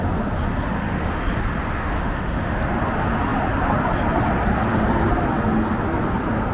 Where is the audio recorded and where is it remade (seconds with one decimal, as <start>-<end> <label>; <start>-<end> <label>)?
0.0-0.7 recorded; 0.7-1.2 remade; 1.2-1.6 recorded; 1.6-2.6 remade; 2.6-6.5 recorded